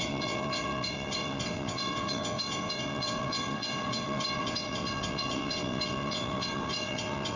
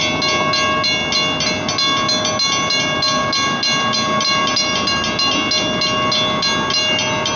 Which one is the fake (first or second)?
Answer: first